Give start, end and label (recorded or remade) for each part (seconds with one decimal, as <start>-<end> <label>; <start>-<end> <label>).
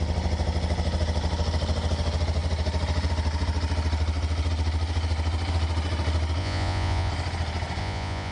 0.0-6.4 recorded; 6.4-7.1 remade; 7.1-7.8 recorded; 7.8-8.3 remade